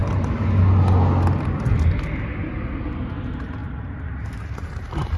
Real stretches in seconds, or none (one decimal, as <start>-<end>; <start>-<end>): 0.0-3.6